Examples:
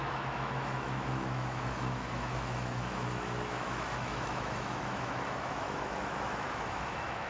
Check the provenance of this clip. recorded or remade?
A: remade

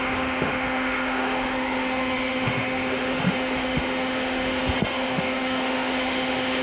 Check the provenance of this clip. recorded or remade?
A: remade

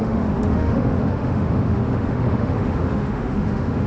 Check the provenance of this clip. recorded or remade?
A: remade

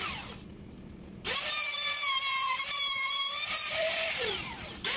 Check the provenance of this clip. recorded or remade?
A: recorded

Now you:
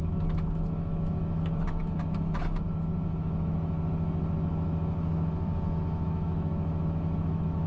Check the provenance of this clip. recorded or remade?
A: remade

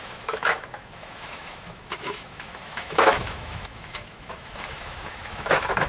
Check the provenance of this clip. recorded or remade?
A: remade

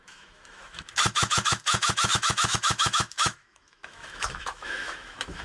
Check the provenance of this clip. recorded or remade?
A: remade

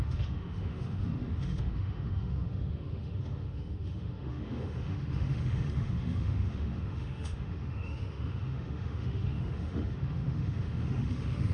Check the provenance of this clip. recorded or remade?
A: remade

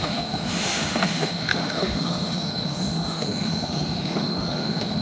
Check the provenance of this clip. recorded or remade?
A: remade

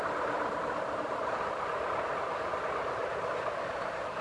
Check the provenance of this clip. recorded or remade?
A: recorded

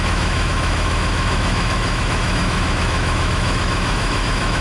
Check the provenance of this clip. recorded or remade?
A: remade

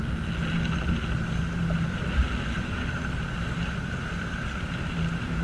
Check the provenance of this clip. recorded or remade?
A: recorded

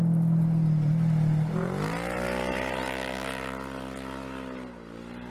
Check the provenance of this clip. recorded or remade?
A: recorded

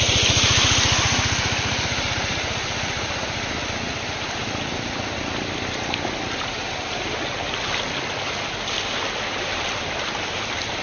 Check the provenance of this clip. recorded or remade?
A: recorded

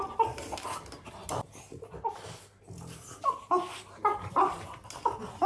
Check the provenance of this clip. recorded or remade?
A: recorded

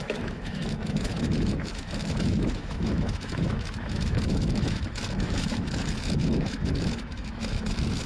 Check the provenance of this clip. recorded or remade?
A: remade